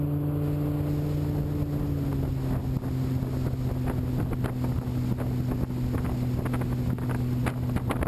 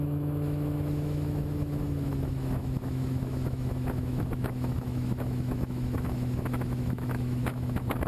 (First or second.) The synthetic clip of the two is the second